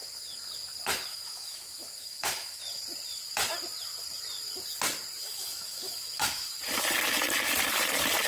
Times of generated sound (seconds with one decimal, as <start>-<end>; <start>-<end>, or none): 1.1-2.6; 5.2-6.6